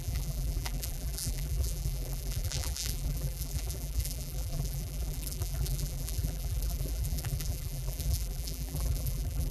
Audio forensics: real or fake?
fake